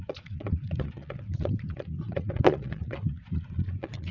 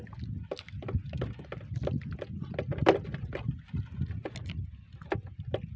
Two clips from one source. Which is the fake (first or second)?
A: first